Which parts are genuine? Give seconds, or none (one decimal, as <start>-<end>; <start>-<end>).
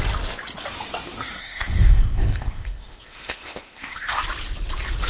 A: 0.0-1.4; 4.2-5.1